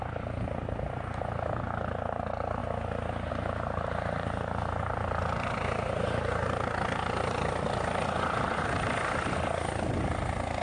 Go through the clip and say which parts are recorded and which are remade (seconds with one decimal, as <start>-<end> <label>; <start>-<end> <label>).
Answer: 0.0-10.6 recorded